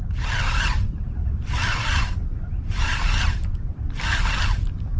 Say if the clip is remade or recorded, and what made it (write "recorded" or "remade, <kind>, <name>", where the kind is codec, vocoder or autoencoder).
recorded